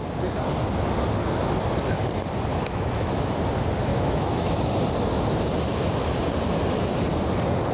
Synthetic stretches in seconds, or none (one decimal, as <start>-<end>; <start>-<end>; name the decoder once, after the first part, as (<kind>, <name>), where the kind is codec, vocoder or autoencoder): 2.5-3.3 (autoencoder, DAC-VAE); 3.9-4.5